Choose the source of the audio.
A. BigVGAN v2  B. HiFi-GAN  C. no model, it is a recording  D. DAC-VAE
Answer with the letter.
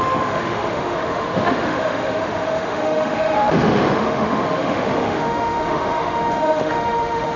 D